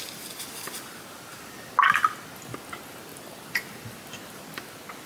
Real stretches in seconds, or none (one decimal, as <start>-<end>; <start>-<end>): 0.0-5.1